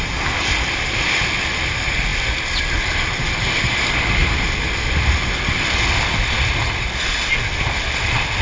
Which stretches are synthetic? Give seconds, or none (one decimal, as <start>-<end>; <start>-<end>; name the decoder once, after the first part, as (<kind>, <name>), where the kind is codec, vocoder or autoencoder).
none